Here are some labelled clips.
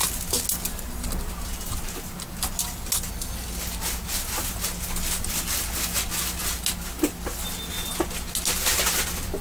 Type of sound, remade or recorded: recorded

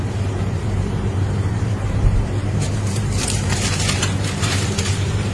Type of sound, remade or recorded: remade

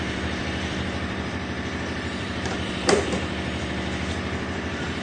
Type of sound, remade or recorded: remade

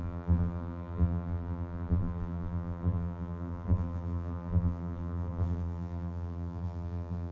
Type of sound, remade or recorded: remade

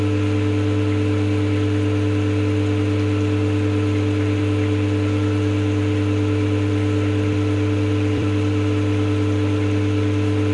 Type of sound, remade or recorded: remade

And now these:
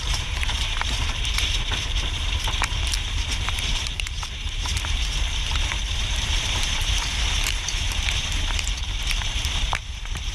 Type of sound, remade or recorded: remade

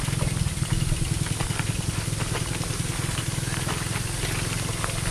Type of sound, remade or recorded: recorded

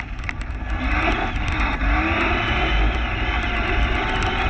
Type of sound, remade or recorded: recorded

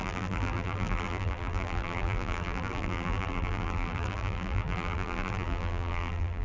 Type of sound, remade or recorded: remade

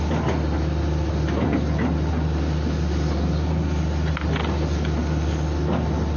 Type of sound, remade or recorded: recorded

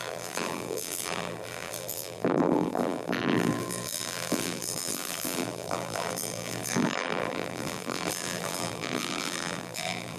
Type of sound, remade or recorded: remade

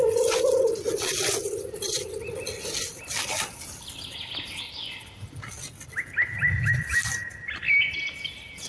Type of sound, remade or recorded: recorded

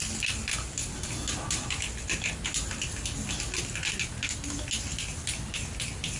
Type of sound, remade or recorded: recorded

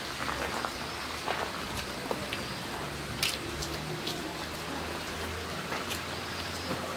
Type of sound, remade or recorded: recorded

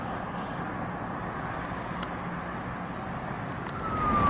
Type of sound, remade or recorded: recorded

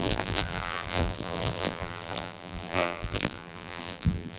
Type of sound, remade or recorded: remade